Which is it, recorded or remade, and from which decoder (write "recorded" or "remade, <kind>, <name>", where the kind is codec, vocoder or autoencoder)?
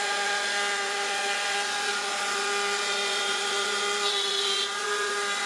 remade, vocoder, Vocos